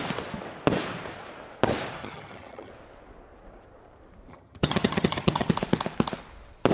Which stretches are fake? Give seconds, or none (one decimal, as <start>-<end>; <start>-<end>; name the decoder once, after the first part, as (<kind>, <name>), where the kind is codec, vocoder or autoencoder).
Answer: 2.0-2.7 (vocoder, HiFi-GAN); 4.3-5.5